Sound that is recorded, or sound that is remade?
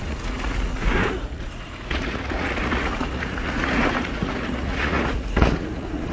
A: remade